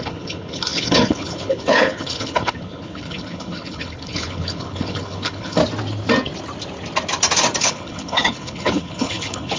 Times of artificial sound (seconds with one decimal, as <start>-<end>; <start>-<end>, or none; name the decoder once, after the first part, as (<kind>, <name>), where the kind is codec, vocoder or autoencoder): 0.0-5.6 (codec, HILCodec); 7.6-9.6